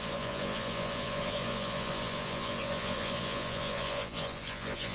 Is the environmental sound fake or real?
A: fake